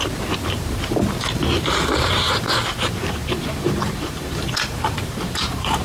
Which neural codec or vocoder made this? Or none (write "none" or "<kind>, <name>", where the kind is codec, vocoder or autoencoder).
vocoder, BigVGAN v2